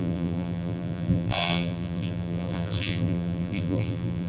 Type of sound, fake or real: fake